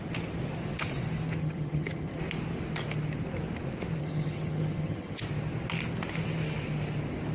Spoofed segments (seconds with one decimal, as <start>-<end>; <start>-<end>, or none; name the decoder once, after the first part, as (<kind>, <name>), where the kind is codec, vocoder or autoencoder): 1.4-2.2 (vocoder, HiFi-GAN); 4.0-5.2